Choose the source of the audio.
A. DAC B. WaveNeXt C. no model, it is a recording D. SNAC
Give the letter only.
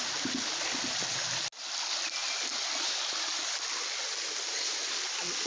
C